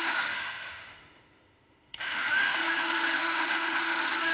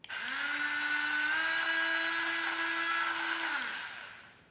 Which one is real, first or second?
second